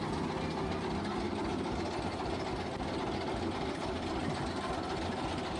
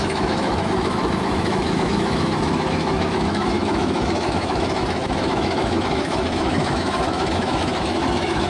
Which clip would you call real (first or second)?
first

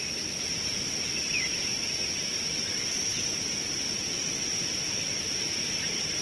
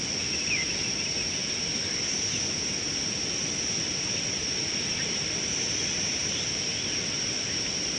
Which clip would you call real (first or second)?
second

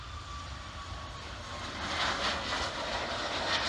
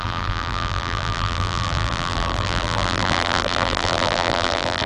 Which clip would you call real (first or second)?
first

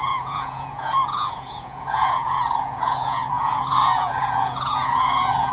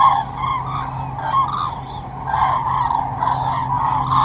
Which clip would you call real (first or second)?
second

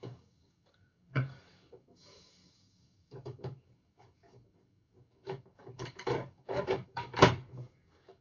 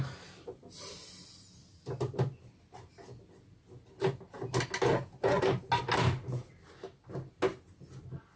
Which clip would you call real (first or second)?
second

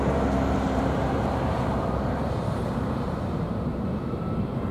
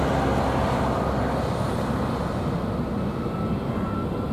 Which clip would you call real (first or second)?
second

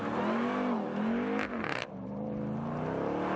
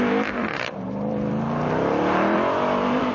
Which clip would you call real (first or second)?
first